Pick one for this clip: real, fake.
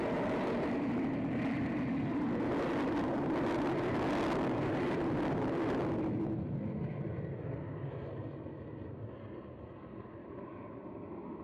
real